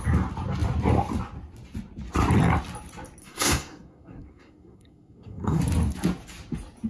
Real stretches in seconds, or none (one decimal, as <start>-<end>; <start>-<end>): 0.0-3.2; 5.6-6.9